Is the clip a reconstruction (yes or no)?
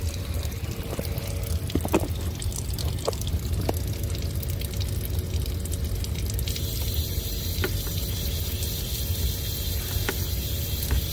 no